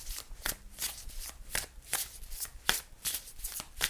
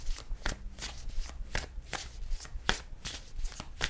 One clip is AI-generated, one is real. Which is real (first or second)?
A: second